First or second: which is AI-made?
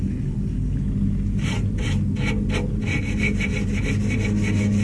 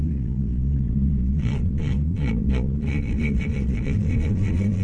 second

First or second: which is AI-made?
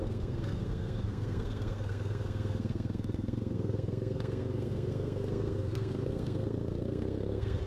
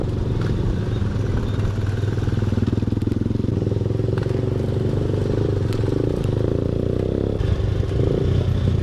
first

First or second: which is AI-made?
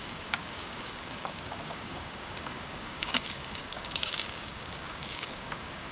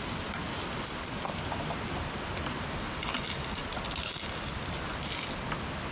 first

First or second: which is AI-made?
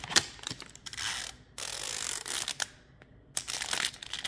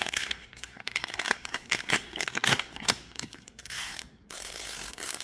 second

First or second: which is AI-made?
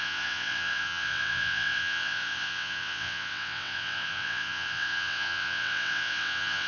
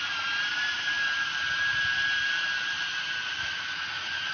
first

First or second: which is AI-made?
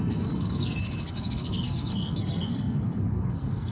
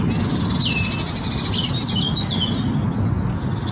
first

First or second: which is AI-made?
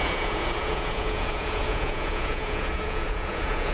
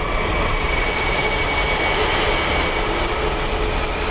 first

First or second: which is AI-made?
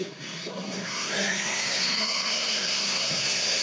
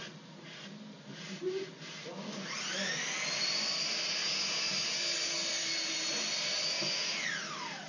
first